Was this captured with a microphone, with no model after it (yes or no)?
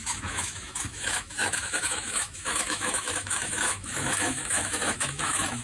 no